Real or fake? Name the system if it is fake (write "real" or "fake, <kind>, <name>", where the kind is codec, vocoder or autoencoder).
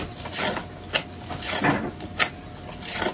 real